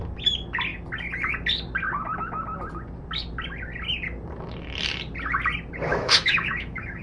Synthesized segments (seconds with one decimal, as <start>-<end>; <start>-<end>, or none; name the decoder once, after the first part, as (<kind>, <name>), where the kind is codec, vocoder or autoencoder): 5.9-7.0 (autoencoder, DAC-VAE)